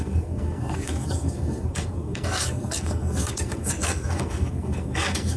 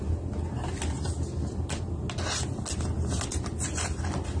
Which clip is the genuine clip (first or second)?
second